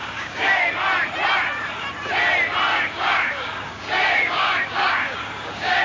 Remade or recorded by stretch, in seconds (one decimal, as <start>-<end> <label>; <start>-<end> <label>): 0.0-0.7 remade; 0.7-2.7 recorded; 2.7-5.8 remade